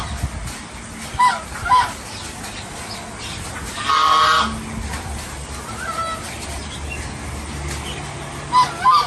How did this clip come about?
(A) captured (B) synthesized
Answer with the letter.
A